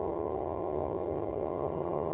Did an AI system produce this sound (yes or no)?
yes